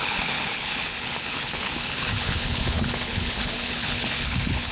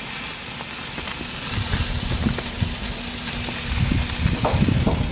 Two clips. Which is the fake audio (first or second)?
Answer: first